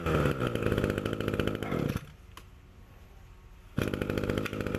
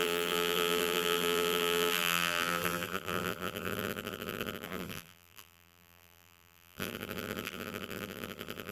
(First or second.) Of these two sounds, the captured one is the first